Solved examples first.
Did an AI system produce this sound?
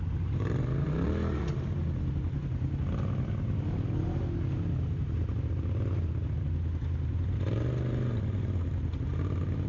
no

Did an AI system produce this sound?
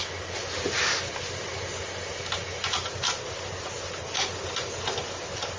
no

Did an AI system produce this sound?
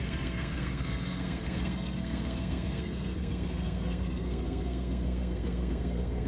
yes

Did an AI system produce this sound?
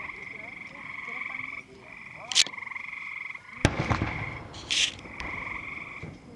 no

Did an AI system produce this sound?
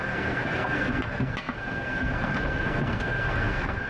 yes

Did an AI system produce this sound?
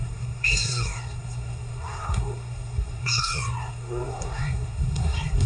yes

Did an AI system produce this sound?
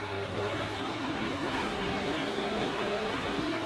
yes